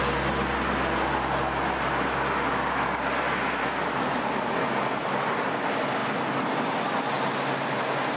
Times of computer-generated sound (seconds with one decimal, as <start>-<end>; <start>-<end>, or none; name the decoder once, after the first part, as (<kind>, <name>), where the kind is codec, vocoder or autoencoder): none